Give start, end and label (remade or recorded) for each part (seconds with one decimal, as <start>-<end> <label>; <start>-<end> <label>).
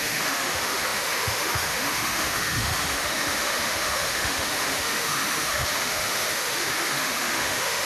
0.0-7.9 remade